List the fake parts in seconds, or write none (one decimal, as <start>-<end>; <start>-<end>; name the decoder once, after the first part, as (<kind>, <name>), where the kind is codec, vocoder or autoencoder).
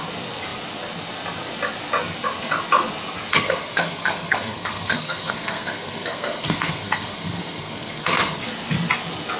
3.3-8.4 (codec, SNAC)